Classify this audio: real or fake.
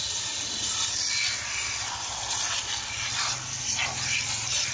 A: real